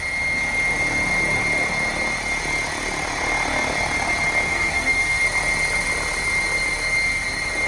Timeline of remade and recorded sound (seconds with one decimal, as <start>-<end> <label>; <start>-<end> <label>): 0.0-4.5 recorded; 4.5-5.2 remade; 5.2-7.7 recorded